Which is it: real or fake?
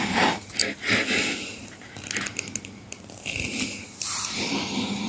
real